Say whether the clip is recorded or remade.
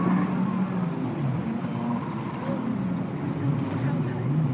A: recorded